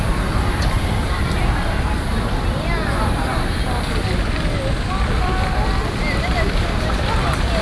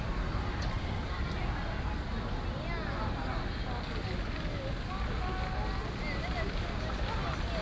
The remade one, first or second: first